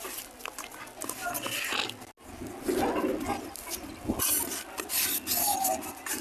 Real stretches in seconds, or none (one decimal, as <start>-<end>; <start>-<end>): 0.0-6.2